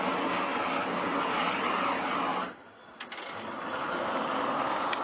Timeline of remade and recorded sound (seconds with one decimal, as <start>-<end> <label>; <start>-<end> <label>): 0.0-5.0 recorded